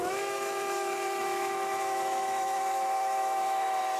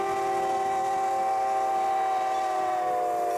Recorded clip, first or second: second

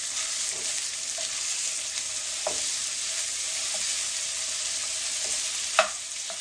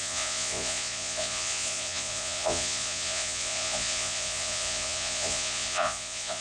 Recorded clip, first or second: first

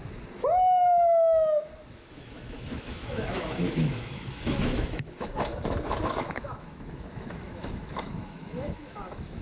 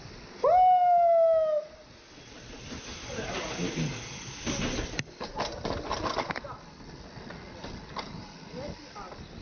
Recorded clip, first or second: second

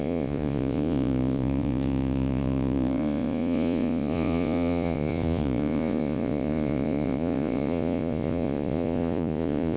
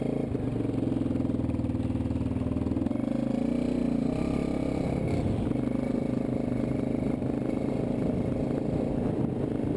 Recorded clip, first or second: second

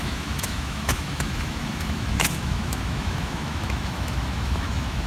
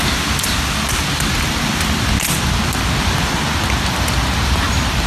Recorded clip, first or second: second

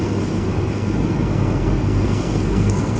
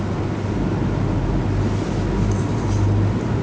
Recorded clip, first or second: second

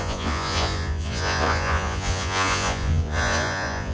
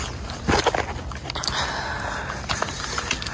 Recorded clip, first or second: second